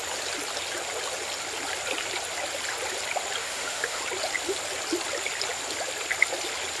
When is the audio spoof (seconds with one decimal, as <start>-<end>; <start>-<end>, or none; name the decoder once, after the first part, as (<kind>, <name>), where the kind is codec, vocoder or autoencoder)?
3.4-4.0 (autoencoder, DAC-VAE)